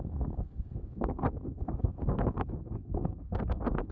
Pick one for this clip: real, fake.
fake